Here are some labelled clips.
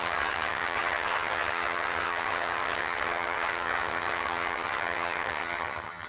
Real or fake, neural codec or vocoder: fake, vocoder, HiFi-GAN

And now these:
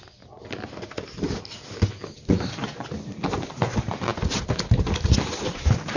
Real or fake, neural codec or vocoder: real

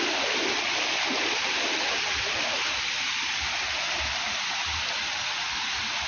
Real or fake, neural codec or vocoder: real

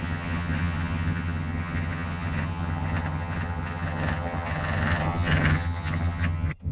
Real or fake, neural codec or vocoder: fake, vocoder, HiFi-GAN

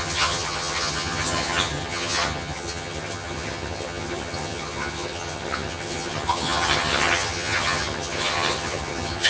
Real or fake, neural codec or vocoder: fake, vocoder, HiFi-GAN